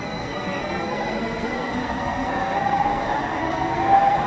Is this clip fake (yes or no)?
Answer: yes